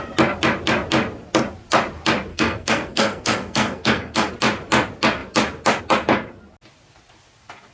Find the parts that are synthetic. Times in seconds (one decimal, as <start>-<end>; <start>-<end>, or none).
2.3-4.3